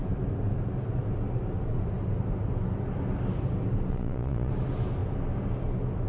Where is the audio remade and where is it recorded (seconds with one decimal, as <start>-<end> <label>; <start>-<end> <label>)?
0.0-3.9 recorded; 3.9-4.5 remade; 4.5-6.1 recorded